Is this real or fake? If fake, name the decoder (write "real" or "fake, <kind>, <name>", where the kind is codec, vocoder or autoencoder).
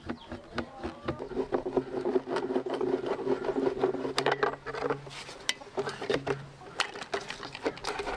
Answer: real